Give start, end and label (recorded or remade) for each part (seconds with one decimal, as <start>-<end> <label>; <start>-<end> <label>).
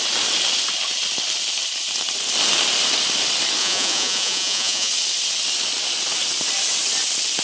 0.0-3.6 recorded; 3.6-4.9 remade; 4.9-7.4 recorded